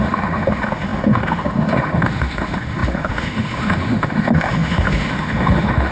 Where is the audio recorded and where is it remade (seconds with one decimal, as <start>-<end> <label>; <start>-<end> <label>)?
0.0-5.9 remade